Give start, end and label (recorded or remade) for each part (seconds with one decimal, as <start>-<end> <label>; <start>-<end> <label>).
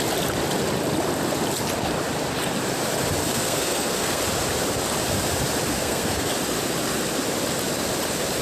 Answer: 0.0-3.2 recorded; 3.2-4.2 remade; 4.2-5.7 recorded; 5.7-6.3 remade; 6.3-8.4 recorded